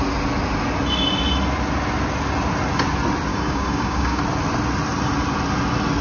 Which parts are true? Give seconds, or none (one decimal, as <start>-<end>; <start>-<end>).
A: 0.0-3.3; 4.2-6.0